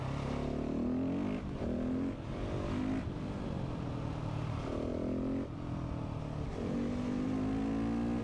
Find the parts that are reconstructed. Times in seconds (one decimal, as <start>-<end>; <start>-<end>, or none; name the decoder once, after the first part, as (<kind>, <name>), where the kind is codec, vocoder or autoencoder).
none